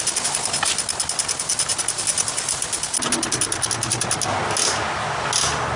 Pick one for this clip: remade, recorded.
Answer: recorded